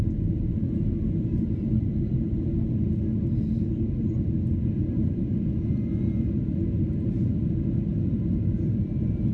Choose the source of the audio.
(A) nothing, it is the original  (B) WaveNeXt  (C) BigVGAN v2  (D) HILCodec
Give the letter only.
A